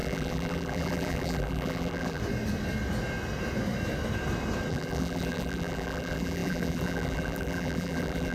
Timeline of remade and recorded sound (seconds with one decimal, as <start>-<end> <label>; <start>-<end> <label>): 0.0-2.2 remade; 2.2-4.7 recorded; 4.7-8.3 remade